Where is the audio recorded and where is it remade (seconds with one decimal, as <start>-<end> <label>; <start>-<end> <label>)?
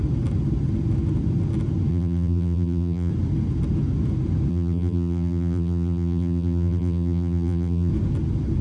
0.0-1.9 recorded; 1.9-3.1 remade; 3.1-4.5 recorded; 4.5-7.9 remade; 7.9-8.6 recorded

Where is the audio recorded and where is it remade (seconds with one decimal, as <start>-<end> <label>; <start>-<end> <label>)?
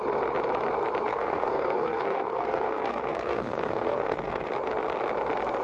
0.0-1.1 recorded; 1.1-4.5 remade; 4.5-5.6 recorded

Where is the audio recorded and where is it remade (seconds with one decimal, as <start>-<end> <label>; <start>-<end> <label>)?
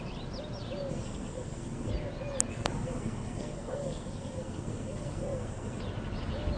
0.0-0.9 recorded; 0.9-1.9 remade; 1.9-2.5 recorded; 2.5-5.8 remade; 5.8-6.6 recorded